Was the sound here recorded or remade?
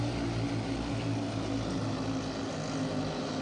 recorded